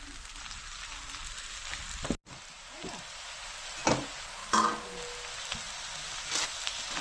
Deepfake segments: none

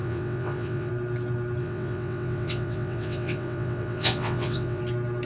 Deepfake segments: 0.0-0.9 (vocoder, WaveNeXt); 1.6-4.8

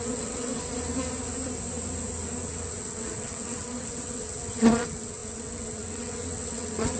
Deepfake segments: 0.0-0.5 (vocoder, WaveNeXt); 2.4-7.0

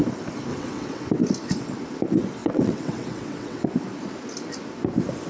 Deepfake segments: 0.5-1.2 (vocoder, WaveNeXt); 2.4-3.7

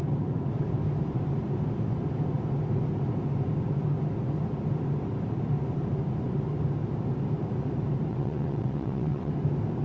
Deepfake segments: 8.1-9.3 (vocoder, WaveNeXt)